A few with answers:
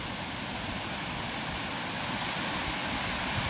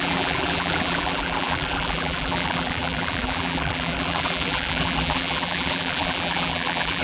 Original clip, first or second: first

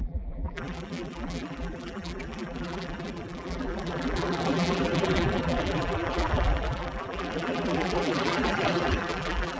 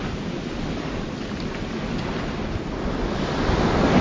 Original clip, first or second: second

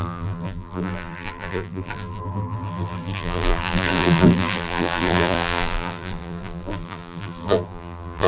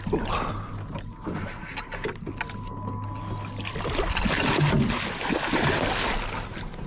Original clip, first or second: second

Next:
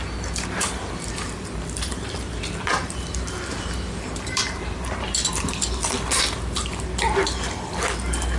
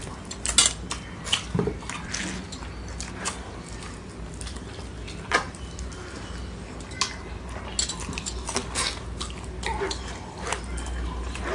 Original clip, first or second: second